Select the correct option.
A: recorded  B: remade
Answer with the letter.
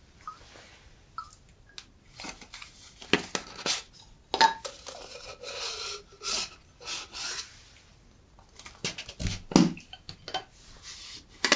A